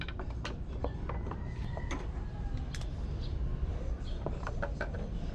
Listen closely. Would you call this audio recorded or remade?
recorded